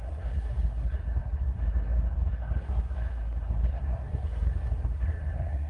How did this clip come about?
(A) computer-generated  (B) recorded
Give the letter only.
A